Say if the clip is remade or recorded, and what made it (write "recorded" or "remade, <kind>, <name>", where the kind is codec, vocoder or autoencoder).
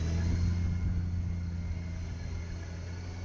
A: recorded